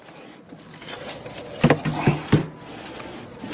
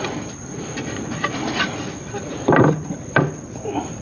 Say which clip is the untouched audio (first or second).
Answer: first